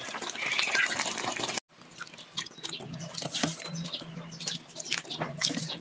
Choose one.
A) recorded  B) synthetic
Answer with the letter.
A